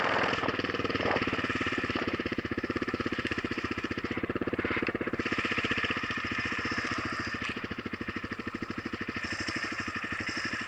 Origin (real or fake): fake